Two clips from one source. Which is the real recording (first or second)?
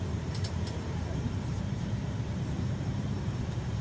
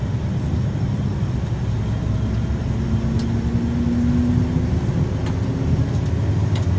second